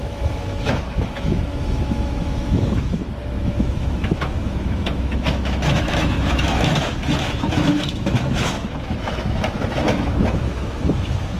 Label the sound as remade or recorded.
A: remade